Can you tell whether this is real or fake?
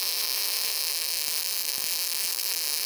real